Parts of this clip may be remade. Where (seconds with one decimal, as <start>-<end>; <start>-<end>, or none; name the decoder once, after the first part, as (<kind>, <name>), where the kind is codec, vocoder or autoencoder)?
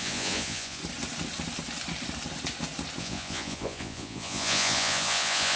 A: 0.0-0.8 (vocoder, Vocos); 3.0-5.6